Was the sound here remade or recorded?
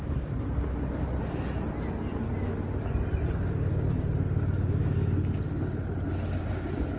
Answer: recorded